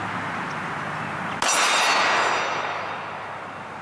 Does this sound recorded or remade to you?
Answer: recorded